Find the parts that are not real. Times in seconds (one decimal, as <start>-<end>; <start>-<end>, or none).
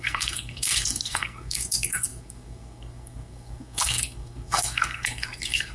0.0-5.7